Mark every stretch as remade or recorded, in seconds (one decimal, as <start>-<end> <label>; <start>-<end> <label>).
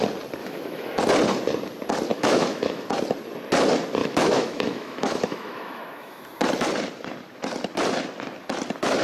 0.0-0.4 recorded; 0.4-1.0 remade; 1.0-2.1 recorded; 2.1-2.9 remade; 2.9-4.0 recorded; 4.0-6.2 remade; 6.2-9.0 recorded